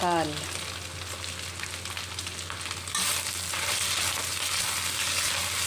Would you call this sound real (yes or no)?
yes